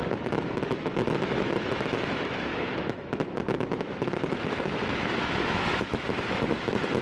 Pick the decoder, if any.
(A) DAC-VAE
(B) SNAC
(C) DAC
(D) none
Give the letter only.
A